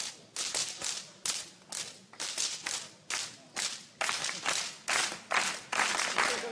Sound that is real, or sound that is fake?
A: real